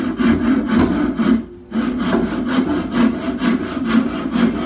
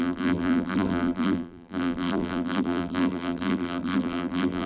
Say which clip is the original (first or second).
first